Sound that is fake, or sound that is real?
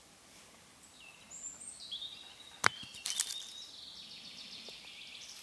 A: real